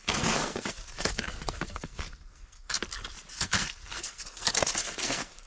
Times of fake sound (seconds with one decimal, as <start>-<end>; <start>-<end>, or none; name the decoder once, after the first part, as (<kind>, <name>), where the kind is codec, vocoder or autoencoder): 0.0-2.8 (codec, SNAC); 3.4-5.5